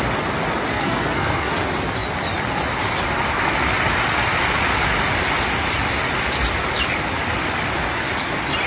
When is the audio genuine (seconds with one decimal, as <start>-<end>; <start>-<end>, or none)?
0.0-0.7; 1.5-8.7